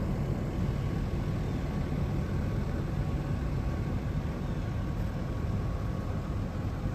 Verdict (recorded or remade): recorded